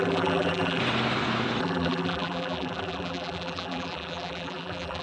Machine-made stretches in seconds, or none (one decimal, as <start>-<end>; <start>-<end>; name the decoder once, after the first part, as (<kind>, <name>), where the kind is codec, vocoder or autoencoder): 0.0-0.8 (vocoder, BigVGAN v2); 1.6-5.0